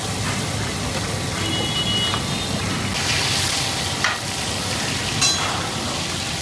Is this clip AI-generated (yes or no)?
no